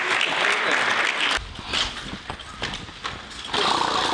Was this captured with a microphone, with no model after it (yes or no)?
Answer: yes